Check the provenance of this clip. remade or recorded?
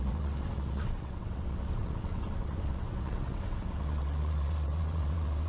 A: remade